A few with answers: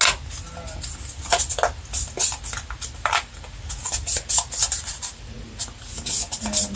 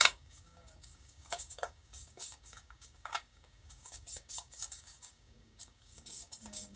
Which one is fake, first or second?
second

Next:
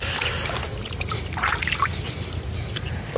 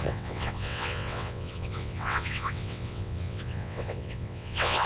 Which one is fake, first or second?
second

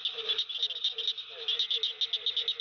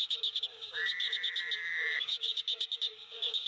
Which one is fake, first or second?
second